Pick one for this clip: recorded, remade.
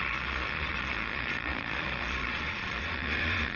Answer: remade